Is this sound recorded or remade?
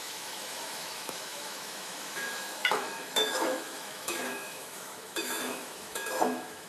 remade